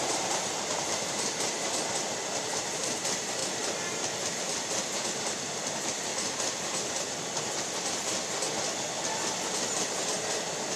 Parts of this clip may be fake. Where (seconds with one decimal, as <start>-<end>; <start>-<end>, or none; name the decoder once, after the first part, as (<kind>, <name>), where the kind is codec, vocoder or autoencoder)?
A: 0.0-3.4 (vocoder, BigVGAN v2); 4.3-6.1; 9.8-10.8